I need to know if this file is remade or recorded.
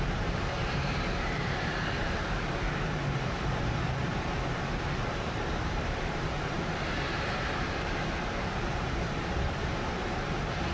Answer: remade